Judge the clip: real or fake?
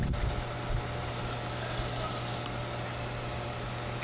real